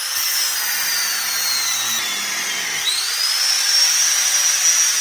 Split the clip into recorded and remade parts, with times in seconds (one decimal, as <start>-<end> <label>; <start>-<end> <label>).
0.0-5.0 recorded